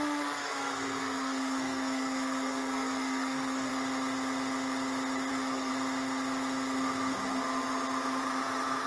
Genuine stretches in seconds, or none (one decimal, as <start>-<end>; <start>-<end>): 3.7-5.3; 5.7-8.9